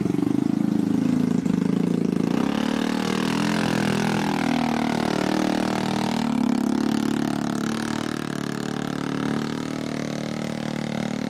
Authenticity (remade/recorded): recorded